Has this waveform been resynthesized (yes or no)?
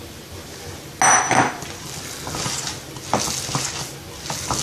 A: no